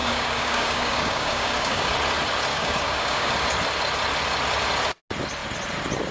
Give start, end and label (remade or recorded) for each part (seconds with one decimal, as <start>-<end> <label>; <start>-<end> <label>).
0.0-1.9 remade; 1.9-2.5 recorded; 2.5-3.3 remade; 3.3-6.1 recorded

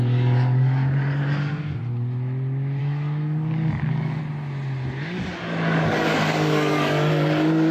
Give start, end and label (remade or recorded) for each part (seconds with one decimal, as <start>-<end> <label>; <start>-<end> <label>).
0.0-1.8 remade; 1.8-2.8 recorded; 2.8-4.2 remade; 4.2-5.0 recorded; 5.0-7.7 remade